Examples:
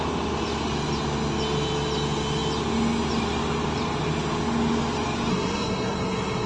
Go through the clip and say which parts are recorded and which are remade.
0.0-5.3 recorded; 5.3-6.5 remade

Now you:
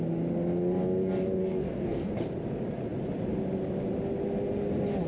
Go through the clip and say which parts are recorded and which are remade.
0.0-1.4 recorded; 1.4-2.1 remade; 2.1-5.1 recorded

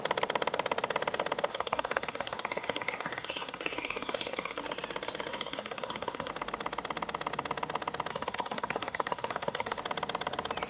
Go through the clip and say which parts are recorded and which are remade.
0.0-1.5 recorded; 1.5-4.6 remade; 4.6-5.3 recorded; 5.3-6.3 remade; 6.3-8.1 recorded; 8.1-9.8 remade; 9.8-10.7 recorded

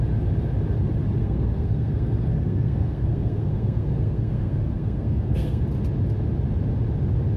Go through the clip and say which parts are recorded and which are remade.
0.0-1.2 recorded; 1.2-5.6 remade; 5.6-7.4 recorded